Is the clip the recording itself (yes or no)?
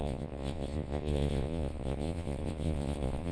no